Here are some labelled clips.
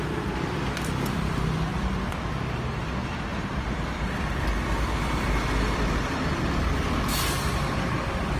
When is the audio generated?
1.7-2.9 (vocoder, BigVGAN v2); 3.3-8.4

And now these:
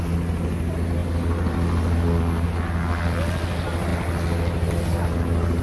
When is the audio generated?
none

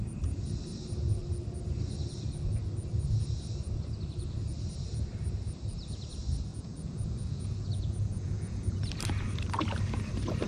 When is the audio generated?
6.5-8.8 (vocoder, Vocos)

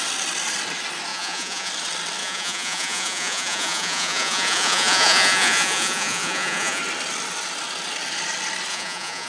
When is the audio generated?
1.1-1.7 (vocoder, Vocos); 2.2-6.8; 8.7-9.3

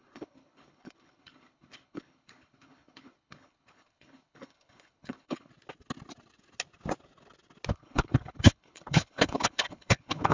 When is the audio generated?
0.0-5.5 (codec, HILCodec); 7.7-10.3